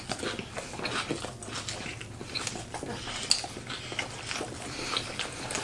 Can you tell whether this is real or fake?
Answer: real